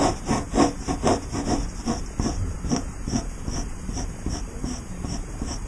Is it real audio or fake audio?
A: real